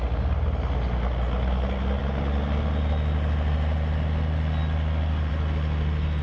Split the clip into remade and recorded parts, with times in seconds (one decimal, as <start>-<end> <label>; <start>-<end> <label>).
0.0-6.2 recorded